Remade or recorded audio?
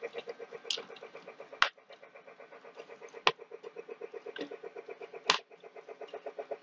recorded